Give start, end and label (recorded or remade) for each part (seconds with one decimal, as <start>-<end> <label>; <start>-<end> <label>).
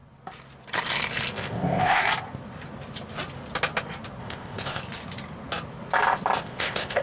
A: 0.0-1.3 recorded; 1.3-2.0 remade; 2.0-4.2 recorded; 4.2-4.8 remade; 4.8-6.4 recorded; 6.4-7.0 remade